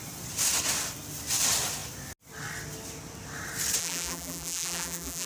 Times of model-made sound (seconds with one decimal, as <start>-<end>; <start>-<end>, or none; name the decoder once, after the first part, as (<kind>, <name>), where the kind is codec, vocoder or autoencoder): 3.8-5.3 (vocoder, BigVGAN v2)